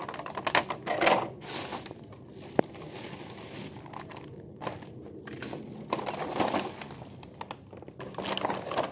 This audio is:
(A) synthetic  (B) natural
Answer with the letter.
B